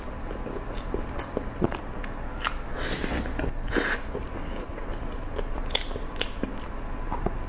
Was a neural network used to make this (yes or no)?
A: no